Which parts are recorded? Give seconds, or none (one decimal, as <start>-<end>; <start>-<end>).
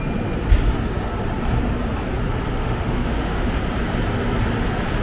0.0-2.6; 3.6-5.0